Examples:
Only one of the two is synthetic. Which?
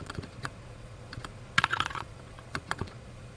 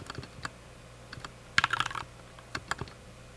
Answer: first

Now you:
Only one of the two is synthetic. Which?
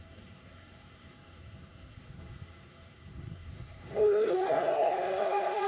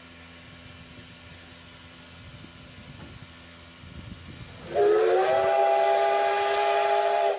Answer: first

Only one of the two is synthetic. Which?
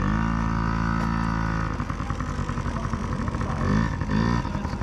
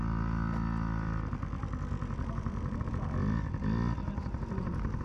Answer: second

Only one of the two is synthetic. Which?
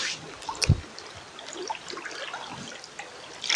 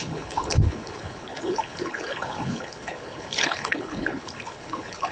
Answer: second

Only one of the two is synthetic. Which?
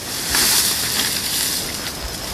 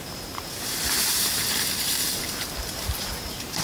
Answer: second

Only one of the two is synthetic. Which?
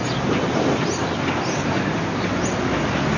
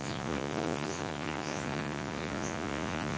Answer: second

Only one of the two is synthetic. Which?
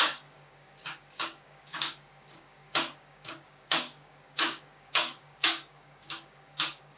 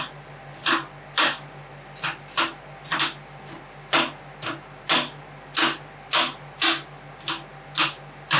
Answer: first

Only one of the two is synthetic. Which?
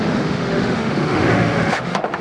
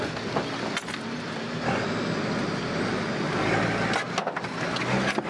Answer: first